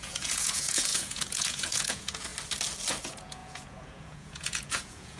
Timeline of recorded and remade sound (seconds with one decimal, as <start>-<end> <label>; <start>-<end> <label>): 0.0-2.3 remade; 2.3-3.0 recorded; 3.0-5.2 remade